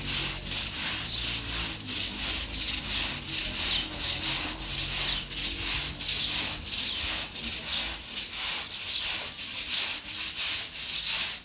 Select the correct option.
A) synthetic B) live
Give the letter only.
B